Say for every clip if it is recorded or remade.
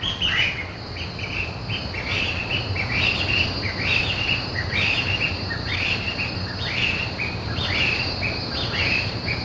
recorded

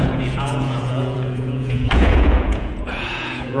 remade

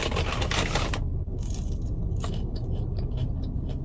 recorded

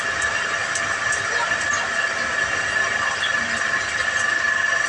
recorded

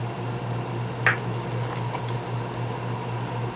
recorded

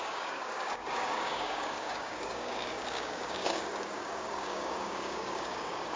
remade